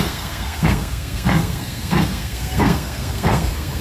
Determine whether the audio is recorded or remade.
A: remade